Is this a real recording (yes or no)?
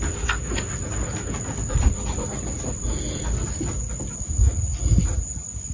yes